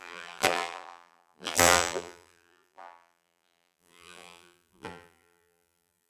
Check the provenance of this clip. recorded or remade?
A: remade